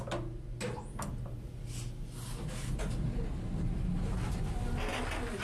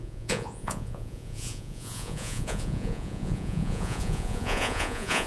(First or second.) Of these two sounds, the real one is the first